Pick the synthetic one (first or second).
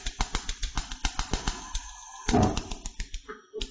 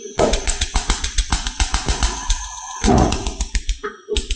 second